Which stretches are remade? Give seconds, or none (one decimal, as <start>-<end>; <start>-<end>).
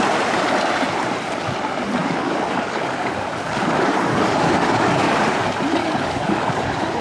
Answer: 2.0-5.2; 5.8-7.0